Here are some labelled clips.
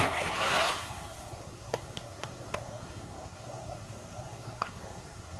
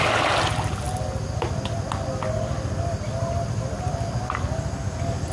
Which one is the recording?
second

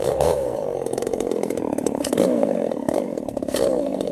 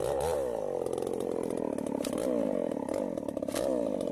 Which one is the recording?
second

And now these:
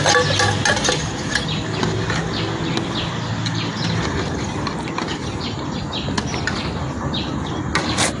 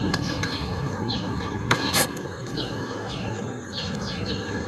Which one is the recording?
first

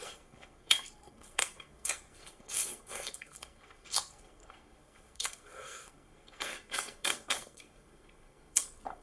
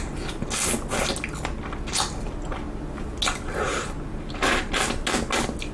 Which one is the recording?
second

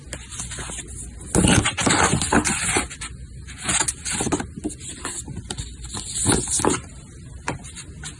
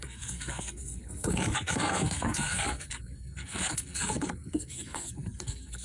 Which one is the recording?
first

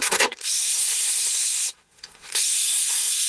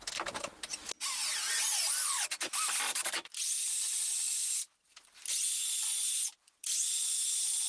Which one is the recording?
second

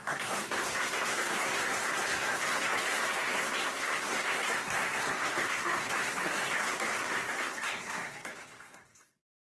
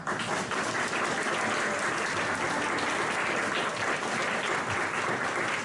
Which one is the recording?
second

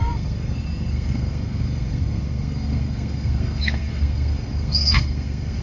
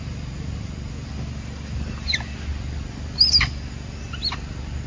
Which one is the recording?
second